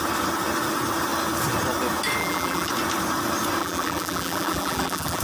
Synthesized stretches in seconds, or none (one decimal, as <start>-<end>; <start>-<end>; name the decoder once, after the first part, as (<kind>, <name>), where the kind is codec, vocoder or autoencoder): 2.2-2.7 (vocoder, BigVGAN v2); 3.6-5.2